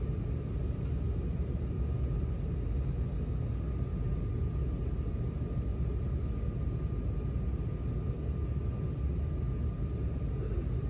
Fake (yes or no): no